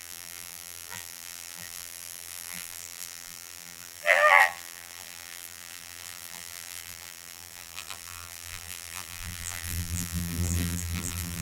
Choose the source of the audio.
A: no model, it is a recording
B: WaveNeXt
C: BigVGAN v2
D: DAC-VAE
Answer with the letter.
C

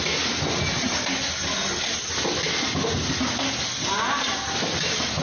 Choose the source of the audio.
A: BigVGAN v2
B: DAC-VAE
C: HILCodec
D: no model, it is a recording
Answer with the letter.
D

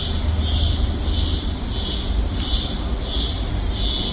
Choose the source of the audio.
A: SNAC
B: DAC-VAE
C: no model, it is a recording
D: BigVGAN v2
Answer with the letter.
C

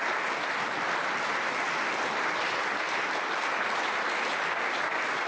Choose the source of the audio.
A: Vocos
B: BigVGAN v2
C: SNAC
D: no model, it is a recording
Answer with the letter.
B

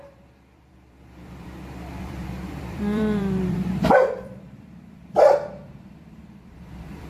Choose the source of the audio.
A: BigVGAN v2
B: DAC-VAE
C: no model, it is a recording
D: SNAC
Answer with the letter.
A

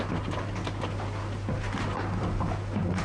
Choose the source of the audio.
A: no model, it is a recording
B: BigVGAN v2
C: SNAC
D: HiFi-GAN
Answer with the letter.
A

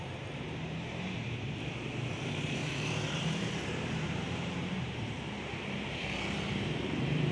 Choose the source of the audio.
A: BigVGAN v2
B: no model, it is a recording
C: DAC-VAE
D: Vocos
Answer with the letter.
A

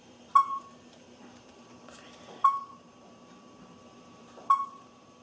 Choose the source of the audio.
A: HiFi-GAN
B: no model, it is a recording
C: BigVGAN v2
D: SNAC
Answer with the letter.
C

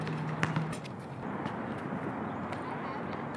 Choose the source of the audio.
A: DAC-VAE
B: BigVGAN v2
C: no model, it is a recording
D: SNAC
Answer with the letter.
C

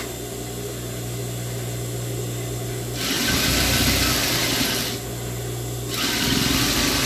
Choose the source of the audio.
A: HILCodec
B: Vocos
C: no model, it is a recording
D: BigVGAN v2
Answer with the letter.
C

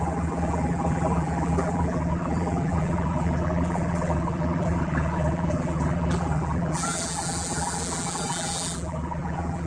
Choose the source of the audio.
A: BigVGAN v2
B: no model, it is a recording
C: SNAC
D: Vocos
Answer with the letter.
A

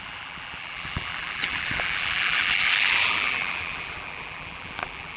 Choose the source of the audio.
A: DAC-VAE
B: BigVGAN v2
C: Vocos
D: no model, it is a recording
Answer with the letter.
B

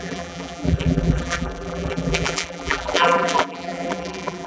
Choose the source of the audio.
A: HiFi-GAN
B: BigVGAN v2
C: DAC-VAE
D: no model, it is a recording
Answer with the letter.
B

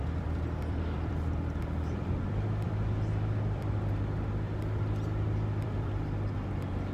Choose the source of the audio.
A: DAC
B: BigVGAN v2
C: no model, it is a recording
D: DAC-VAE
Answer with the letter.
B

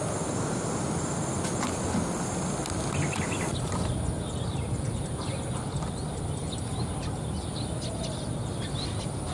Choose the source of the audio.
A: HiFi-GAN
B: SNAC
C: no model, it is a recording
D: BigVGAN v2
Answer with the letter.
C